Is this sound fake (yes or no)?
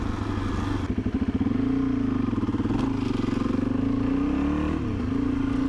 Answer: no